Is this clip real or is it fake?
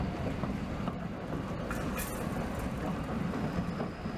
real